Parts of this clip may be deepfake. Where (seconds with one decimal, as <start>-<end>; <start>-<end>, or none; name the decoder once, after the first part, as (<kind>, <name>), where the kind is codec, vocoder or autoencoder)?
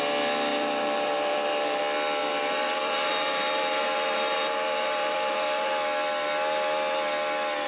0.5-1.8 (vocoder, BigVGAN v2); 2.2-5.7